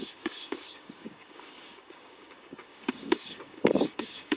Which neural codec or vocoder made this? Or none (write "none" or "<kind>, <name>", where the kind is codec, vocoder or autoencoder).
codec, DAC